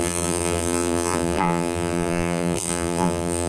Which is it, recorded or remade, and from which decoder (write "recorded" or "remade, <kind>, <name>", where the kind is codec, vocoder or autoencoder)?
remade, vocoder, BigVGAN v2